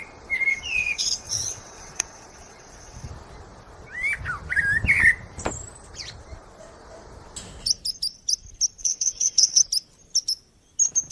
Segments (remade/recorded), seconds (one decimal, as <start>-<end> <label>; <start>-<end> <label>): 0.0-0.5 recorded; 0.5-3.1 remade; 3.1-8.8 recorded; 8.8-9.6 remade; 9.6-11.1 recorded

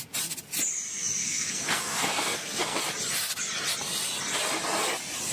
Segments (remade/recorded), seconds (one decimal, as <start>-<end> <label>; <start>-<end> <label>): 0.0-1.2 recorded; 1.2-2.8 remade; 2.8-5.3 recorded

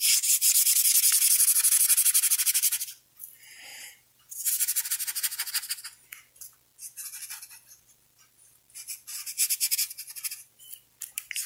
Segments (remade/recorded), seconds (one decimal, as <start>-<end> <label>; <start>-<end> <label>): 0.0-3.7 recorded; 3.7-4.5 remade; 4.5-11.5 recorded

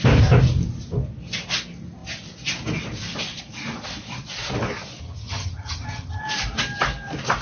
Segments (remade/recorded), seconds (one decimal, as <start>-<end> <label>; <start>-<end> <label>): 0.0-5.0 recorded; 5.0-6.2 remade; 6.2-7.4 recorded

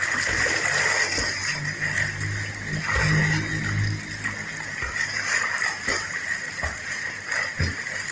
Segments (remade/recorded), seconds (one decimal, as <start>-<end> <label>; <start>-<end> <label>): 0.0-8.1 recorded

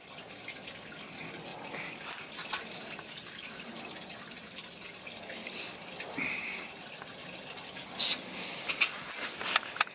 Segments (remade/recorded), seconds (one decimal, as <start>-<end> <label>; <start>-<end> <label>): 0.0-1.5 recorded; 1.5-5.0 remade; 5.0-9.9 recorded